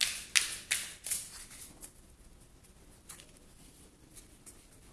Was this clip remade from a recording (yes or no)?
no